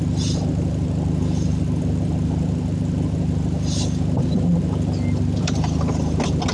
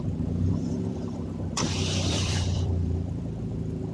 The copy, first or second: second